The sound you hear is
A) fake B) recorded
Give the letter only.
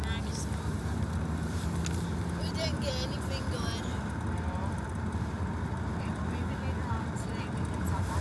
B